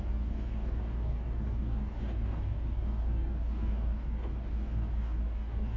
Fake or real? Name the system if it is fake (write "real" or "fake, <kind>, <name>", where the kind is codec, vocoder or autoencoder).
fake, codec, DAC